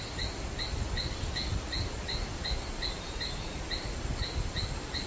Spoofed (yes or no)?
no